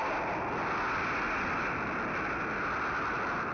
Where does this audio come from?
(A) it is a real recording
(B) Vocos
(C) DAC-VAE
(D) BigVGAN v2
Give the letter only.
A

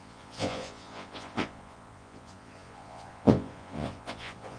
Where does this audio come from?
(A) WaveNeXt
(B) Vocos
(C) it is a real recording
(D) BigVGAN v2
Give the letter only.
B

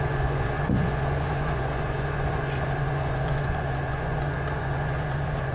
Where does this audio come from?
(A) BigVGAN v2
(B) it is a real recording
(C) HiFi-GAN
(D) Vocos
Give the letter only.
D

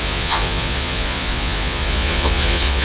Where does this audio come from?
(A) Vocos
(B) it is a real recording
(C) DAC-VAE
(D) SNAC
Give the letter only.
A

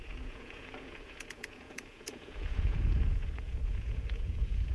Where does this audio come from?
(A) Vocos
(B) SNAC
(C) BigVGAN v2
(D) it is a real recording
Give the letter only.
A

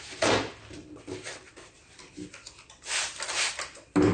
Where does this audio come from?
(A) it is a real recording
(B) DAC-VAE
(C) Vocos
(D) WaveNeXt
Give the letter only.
A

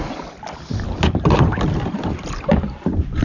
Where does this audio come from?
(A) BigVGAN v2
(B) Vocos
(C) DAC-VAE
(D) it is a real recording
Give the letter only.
D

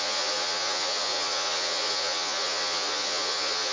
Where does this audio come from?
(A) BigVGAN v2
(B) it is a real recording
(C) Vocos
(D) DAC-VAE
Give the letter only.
C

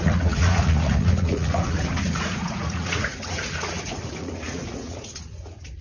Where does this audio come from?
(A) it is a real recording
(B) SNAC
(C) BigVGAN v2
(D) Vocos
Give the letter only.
D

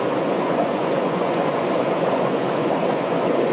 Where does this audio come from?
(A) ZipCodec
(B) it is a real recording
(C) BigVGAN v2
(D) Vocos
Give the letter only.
D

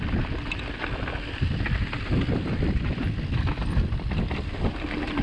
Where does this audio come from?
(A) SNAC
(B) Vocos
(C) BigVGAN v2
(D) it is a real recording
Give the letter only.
D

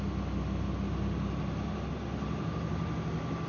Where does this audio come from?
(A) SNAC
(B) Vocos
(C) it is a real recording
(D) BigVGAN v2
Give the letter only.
C